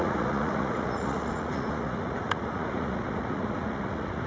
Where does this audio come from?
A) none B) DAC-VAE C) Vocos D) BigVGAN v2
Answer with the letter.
C